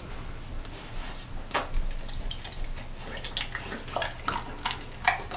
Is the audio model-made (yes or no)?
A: no